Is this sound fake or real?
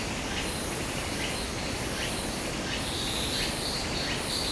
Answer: real